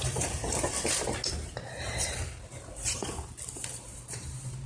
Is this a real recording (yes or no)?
yes